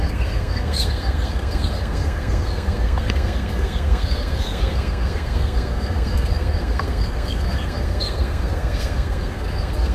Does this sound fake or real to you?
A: fake